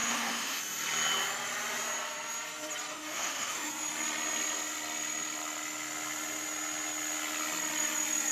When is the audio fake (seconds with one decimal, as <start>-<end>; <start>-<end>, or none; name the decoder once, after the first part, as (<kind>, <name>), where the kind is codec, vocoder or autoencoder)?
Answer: 0.0-0.6 (autoencoder, DAC-VAE); 2.9-3.7